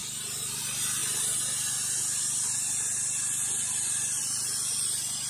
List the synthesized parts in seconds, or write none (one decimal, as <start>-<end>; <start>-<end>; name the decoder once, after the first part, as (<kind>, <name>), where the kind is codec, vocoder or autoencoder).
none